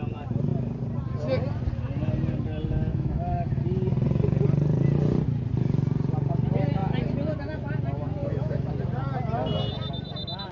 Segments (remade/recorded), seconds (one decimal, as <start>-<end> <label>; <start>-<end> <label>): 0.0-2.9 recorded; 2.9-3.6 remade; 3.6-8.2 recorded; 8.2-8.7 remade; 8.7-10.5 recorded